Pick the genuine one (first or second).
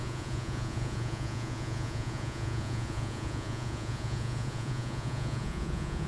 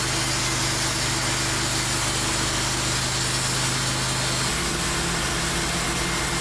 second